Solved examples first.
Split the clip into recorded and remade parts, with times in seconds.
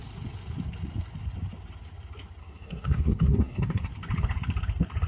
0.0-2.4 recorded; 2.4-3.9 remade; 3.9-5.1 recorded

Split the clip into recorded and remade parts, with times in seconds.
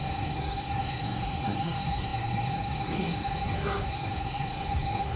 0.0-5.2 remade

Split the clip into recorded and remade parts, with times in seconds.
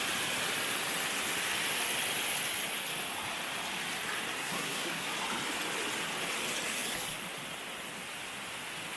0.0-4.4 recorded; 4.4-5.1 remade; 5.1-9.0 recorded